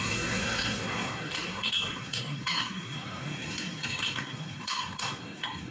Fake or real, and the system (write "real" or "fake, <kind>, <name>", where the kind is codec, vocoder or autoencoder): fake, codec, SNAC